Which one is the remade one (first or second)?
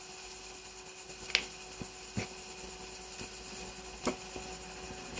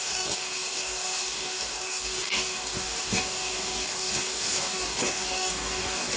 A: second